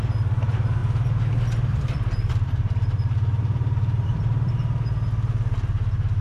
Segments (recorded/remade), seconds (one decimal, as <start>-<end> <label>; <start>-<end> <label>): 0.0-0.8 recorded; 0.8-4.5 remade; 4.5-6.2 recorded